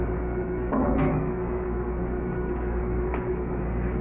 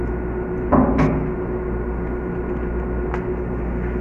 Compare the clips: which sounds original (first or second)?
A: second